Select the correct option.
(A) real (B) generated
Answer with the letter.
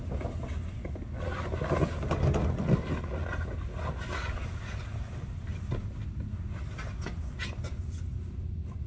A